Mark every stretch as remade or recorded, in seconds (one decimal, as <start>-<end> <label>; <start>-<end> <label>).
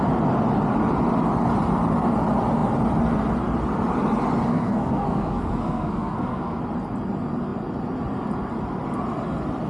0.0-4.5 recorded; 4.5-6.6 remade; 6.6-9.7 recorded